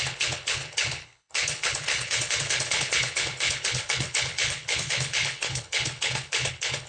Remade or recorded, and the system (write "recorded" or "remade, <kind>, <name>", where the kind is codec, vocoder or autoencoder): remade, codec, HILCodec